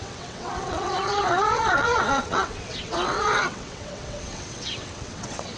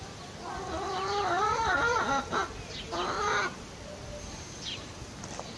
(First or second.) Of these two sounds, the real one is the second